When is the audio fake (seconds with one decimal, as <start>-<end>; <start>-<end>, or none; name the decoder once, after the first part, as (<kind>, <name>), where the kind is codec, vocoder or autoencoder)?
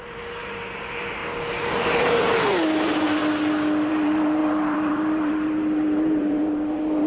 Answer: 0.0-1.2 (vocoder, BigVGAN v2); 1.7-3.2; 3.9-7.1